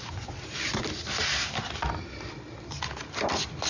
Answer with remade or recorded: recorded